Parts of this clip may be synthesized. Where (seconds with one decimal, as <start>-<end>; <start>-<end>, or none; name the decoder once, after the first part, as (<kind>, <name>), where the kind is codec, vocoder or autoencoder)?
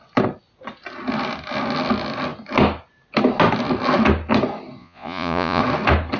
4.8-5.6 (vocoder, Vocos)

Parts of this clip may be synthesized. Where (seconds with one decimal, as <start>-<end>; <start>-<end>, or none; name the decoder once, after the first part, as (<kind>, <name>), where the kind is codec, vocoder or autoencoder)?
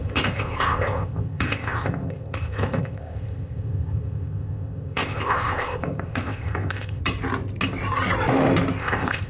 0.0-7.0 (codec, ZipCodec); 8.8-9.3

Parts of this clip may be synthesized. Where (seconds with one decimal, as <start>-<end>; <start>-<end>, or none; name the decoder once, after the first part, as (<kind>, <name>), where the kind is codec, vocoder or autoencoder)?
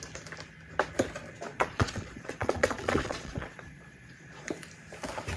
1.5-4.5 (vocoder, Vocos)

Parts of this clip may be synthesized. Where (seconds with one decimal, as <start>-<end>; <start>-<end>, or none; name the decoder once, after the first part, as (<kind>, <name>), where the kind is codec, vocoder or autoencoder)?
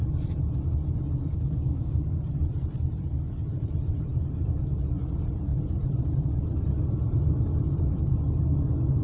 1.3-2.0 (codec, DAC)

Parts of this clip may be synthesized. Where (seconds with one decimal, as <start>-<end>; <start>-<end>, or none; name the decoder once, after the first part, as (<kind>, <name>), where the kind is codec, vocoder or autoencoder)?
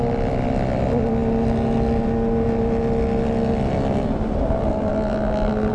none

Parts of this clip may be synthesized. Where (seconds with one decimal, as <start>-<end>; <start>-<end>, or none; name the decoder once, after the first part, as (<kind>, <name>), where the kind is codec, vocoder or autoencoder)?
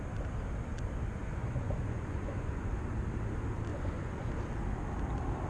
1.2-2.7 (vocoder, Vocos); 3.7-4.3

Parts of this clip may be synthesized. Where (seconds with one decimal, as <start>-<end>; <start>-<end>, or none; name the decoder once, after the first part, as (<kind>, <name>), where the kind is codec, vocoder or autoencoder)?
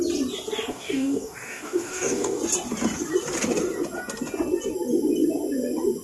0.7-2.4 (codec, DAC)